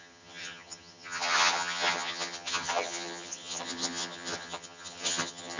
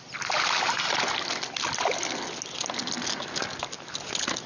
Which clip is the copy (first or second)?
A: first